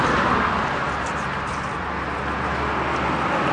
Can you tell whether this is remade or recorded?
recorded